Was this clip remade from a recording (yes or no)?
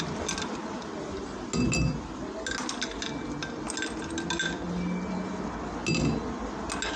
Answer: no